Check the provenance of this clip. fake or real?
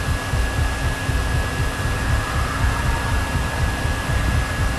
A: real